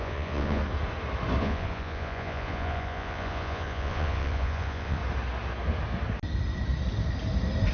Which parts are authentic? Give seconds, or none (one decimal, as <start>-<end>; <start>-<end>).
0.6-1.4; 5.0-7.7